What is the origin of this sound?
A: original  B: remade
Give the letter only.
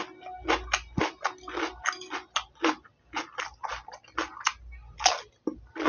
A